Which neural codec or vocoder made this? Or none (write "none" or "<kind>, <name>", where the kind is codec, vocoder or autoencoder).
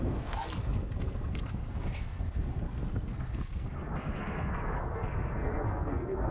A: codec, SNAC